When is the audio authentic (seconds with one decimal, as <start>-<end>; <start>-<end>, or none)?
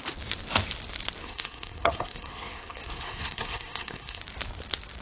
0.0-1.2; 4.2-5.0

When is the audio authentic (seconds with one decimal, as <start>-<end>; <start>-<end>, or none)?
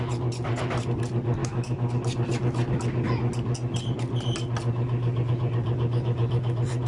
0.0-1.4; 1.9-6.9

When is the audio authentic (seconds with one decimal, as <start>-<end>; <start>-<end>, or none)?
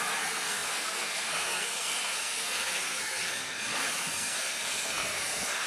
none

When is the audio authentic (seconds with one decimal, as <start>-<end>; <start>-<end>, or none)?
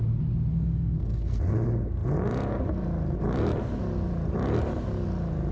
0.0-0.5; 1.4-5.5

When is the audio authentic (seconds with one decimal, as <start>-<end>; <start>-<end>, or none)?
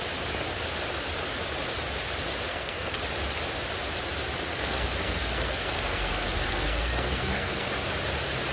0.0-2.5; 3.0-4.5; 7.7-8.5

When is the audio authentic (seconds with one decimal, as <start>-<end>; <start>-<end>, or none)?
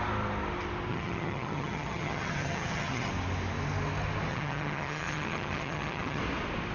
0.0-0.9; 3.1-4.3; 6.2-6.7